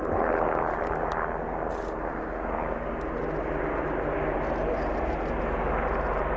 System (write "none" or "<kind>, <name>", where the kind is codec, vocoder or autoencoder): none